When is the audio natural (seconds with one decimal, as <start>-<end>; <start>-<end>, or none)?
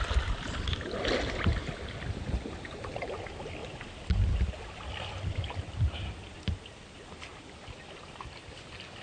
0.0-9.0